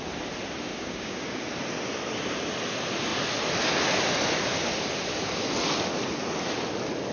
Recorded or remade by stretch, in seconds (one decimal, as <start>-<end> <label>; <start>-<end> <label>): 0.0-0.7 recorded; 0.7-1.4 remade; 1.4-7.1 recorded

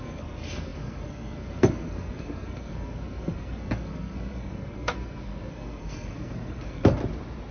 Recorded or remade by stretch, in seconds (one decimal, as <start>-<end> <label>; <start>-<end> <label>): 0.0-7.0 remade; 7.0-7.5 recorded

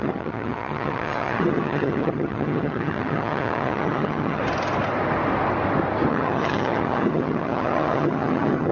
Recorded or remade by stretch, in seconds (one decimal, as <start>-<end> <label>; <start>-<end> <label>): 0.0-4.4 remade; 4.4-6.1 recorded; 6.1-8.7 remade

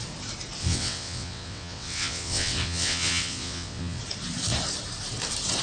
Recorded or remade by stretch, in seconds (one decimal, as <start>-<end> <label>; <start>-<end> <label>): 0.0-0.6 recorded; 0.6-4.0 remade; 4.0-5.6 recorded

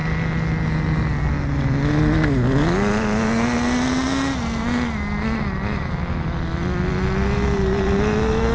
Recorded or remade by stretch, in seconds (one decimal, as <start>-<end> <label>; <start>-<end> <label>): 0.0-8.5 recorded

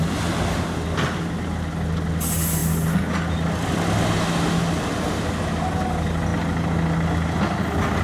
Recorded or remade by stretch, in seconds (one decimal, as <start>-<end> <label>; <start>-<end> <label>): 0.0-8.0 recorded